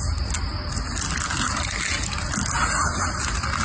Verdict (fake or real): real